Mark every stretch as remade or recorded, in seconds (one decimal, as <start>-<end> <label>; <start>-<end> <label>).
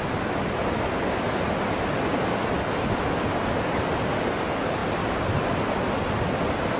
0.0-6.8 recorded